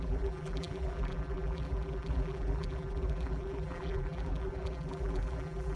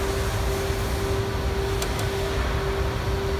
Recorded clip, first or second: second